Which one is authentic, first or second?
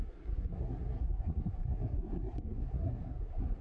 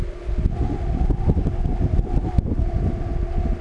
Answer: second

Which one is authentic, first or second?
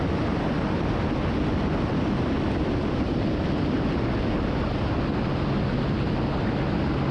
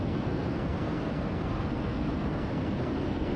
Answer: first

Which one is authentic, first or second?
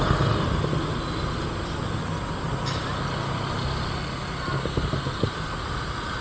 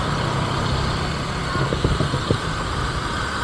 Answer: first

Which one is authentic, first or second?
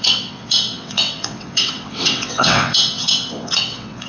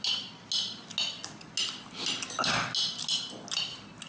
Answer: second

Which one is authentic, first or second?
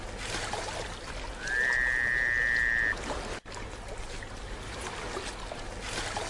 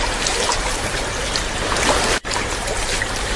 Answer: first